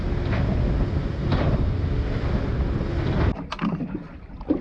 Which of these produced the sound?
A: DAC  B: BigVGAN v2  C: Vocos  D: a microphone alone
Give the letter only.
D